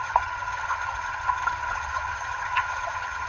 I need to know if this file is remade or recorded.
remade